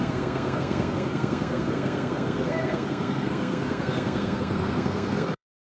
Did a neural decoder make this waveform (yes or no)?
yes